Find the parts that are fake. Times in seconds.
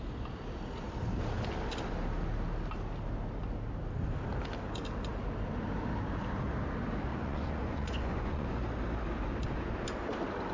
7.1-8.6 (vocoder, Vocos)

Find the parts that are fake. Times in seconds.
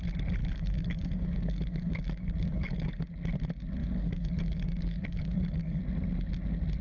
0.4-3.0 (codec, DAC); 3.8-5.8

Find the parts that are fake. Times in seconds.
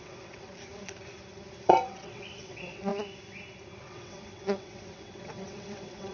0.0-0.5 (vocoder, WaveNeXt); 1.6-2.9; 3.8-6.1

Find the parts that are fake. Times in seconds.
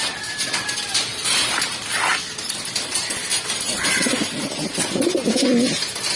1.1-1.7 (vocoder, BigVGAN v2); 3.3-4.9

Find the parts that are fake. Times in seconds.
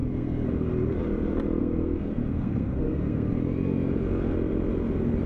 0.0-0.5 (codec, SNAC); 1.6-3.3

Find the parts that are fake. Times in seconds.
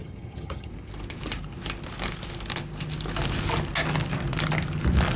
0.0-0.7 (vocoder, HiFi-GAN)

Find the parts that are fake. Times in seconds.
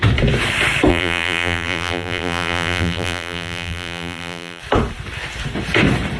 0.9-4.6 (vocoder, BigVGAN v2)